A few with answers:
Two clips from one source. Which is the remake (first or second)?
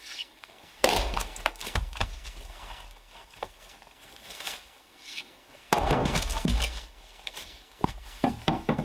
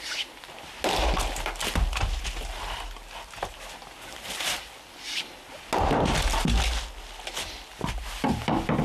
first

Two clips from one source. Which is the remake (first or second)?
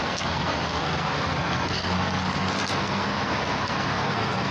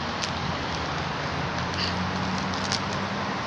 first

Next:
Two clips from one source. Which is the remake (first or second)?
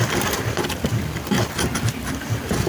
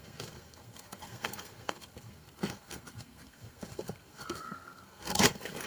second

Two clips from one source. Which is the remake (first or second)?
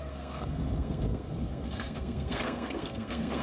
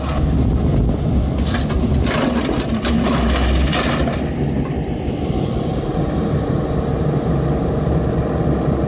first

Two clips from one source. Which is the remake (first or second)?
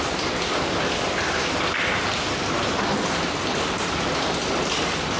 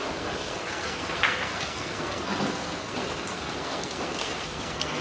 second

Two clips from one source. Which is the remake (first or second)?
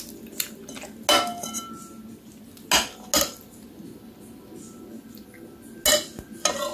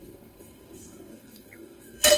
second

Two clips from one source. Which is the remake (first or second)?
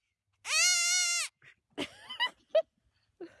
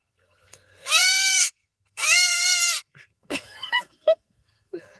second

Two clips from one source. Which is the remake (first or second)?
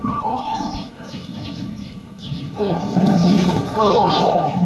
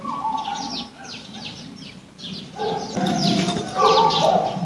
first